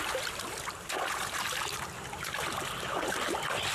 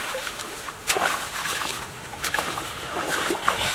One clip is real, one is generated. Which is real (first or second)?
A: first